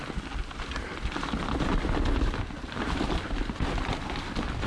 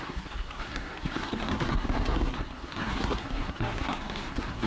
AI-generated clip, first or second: second